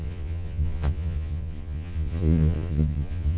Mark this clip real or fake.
fake